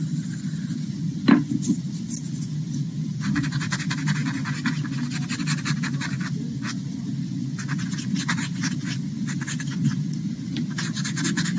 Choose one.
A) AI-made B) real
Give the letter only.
B